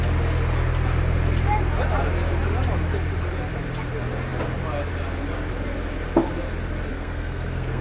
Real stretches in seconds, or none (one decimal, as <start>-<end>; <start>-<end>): 0.0-6.9